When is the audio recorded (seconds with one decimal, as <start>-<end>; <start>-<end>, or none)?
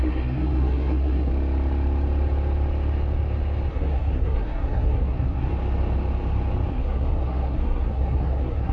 1.3-3.7; 5.5-6.7